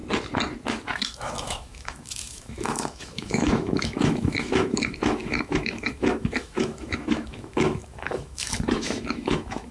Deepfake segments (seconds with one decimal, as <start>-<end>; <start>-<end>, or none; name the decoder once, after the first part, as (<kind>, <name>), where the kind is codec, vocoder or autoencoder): 0.7-9.7 (autoencoder, DAC-VAE)